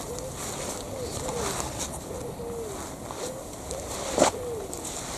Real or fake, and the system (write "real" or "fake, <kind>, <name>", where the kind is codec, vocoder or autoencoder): real